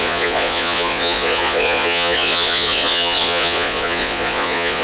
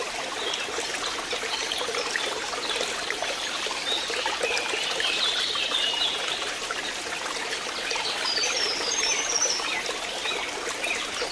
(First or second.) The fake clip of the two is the first